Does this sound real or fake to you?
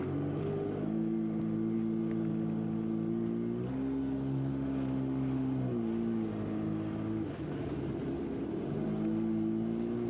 real